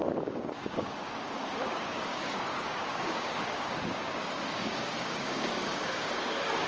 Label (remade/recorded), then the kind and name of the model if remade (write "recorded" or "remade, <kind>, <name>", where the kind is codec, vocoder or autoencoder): remade, codec, DAC